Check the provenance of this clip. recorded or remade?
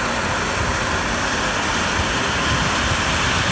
recorded